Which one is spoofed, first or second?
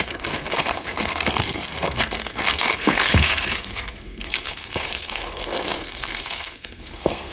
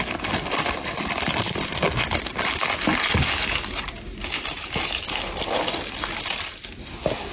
first